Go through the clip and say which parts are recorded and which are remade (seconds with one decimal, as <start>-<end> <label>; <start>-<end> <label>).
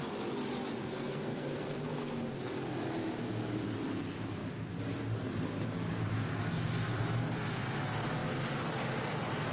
0.0-0.8 recorded; 0.8-2.1 remade; 2.1-9.5 recorded